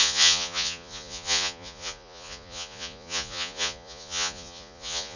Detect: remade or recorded remade